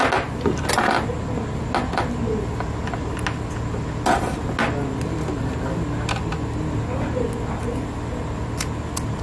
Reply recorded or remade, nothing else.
recorded